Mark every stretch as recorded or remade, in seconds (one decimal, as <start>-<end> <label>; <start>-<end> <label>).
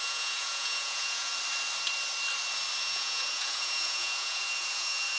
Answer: 0.0-1.3 remade; 1.3-2.8 recorded; 2.8-5.2 remade